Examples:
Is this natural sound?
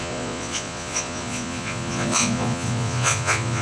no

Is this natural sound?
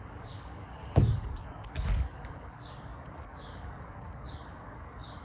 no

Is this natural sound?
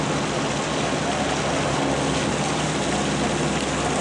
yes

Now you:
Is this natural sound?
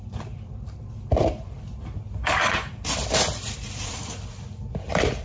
no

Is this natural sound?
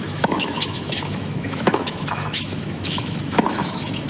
no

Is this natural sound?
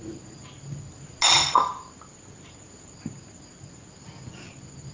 yes